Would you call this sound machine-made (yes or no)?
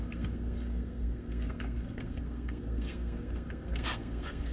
yes